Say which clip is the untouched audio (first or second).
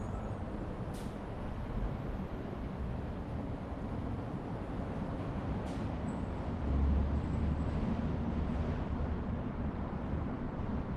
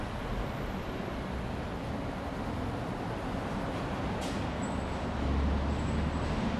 second